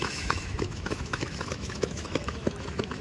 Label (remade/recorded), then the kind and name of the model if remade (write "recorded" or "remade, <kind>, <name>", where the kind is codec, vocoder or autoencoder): remade, autoencoder, DAC-VAE